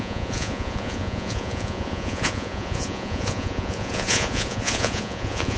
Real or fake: fake